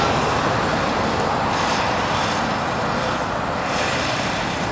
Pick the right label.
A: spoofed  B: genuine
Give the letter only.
B